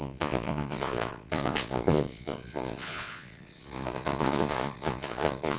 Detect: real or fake fake